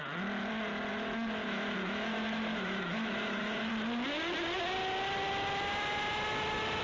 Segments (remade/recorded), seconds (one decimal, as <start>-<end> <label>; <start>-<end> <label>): 0.0-0.9 recorded; 0.9-3.7 remade; 3.7-6.8 recorded